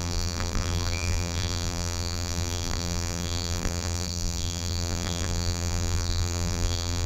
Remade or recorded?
remade